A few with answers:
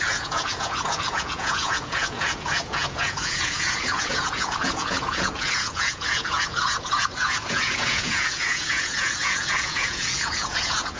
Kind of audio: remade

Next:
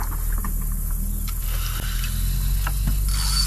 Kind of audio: recorded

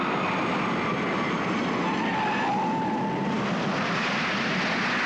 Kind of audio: recorded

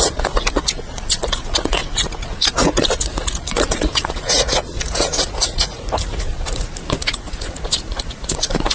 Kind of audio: remade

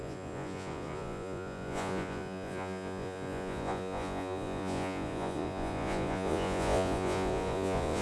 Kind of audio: remade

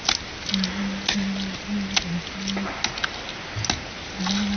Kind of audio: recorded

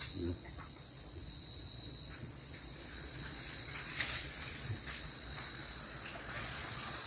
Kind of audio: remade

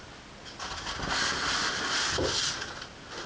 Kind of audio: recorded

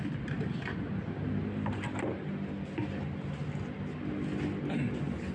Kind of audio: recorded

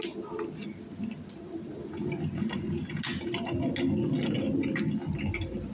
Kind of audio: recorded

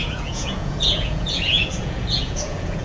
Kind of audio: remade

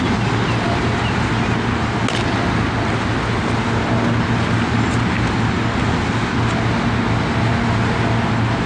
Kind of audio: recorded